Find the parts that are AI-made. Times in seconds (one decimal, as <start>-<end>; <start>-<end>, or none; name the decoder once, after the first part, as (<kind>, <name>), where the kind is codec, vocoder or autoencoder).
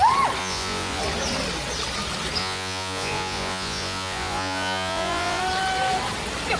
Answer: 0.4-1.0 (vocoder, Vocos); 2.4-5.4